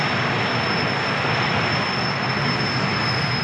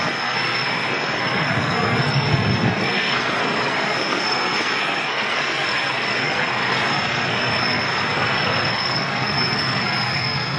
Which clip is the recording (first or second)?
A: first